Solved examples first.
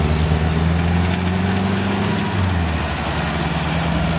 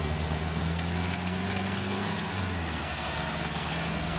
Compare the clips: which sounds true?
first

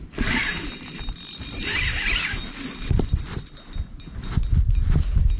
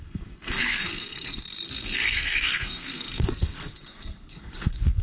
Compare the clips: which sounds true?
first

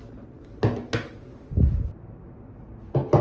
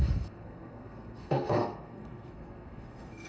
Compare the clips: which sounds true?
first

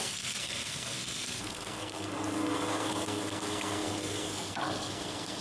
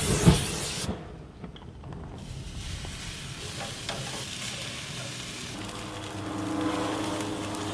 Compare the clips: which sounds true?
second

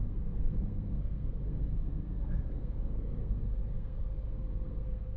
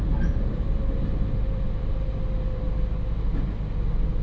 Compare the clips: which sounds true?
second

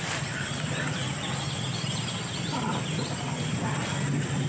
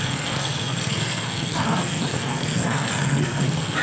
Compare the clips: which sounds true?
first